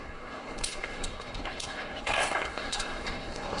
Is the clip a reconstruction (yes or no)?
yes